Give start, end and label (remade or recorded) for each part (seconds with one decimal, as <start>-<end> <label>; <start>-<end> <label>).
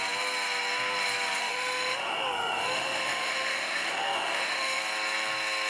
0.0-1.4 recorded; 1.4-4.8 remade; 4.8-5.7 recorded